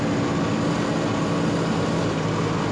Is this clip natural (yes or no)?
yes